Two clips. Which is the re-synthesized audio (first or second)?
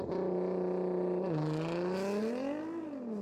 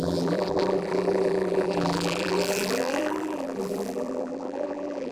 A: second